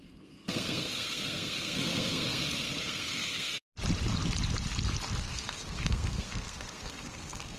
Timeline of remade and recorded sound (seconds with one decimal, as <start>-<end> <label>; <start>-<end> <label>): 0.0-3.7 remade; 3.7-5.2 recorded; 5.2-7.6 remade